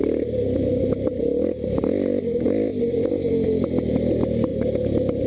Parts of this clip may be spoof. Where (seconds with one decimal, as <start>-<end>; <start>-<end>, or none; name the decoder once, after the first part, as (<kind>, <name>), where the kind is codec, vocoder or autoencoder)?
none